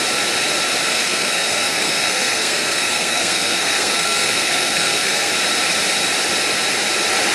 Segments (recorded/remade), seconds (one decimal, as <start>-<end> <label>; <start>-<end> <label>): 0.0-0.9 recorded; 0.9-5.3 remade; 5.3-7.3 recorded